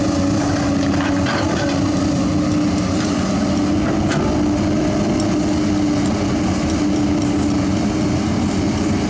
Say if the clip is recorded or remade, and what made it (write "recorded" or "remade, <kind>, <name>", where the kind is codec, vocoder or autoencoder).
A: recorded